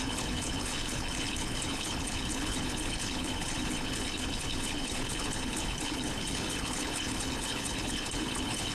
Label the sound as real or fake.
fake